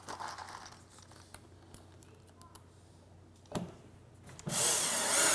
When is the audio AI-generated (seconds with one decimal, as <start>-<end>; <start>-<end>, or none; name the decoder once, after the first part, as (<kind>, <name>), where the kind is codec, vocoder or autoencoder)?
none